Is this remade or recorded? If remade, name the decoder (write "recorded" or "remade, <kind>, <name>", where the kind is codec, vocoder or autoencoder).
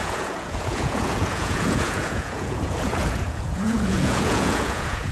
remade, vocoder, Vocos